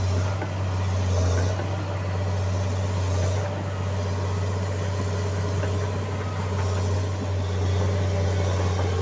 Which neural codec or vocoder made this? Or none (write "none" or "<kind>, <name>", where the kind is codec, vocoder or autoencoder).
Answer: none